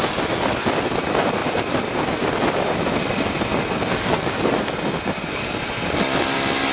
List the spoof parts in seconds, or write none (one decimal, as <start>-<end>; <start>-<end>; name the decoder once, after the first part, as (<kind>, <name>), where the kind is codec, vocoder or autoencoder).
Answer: none